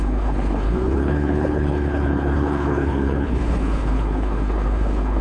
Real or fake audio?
fake